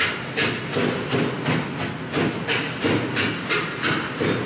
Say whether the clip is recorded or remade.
recorded